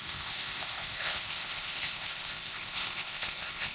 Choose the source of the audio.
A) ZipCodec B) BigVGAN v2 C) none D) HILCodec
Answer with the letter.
A